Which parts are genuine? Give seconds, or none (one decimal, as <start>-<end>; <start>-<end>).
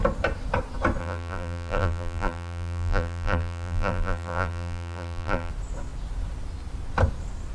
0.0-1.0; 5.5-7.5